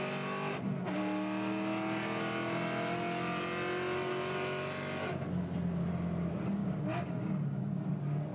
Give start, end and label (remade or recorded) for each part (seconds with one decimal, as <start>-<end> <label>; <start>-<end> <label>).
0.0-6.6 recorded; 6.6-7.7 remade; 7.7-8.3 recorded